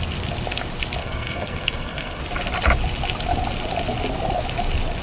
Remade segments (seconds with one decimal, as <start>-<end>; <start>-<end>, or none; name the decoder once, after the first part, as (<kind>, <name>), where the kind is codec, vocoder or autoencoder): 1.0-2.2 (codec, SNAC)